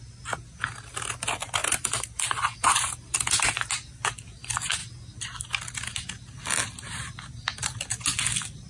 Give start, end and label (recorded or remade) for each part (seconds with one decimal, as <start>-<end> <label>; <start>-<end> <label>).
0.0-1.6 recorded; 1.6-3.2 remade; 3.2-8.7 recorded